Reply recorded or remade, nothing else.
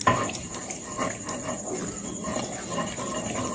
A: recorded